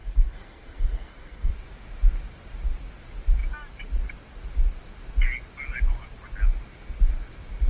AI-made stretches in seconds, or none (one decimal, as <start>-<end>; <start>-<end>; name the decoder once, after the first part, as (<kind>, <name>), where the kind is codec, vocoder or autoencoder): 0.0-1.5 (codec, SNAC)